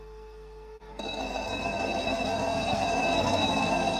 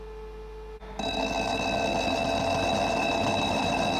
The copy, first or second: first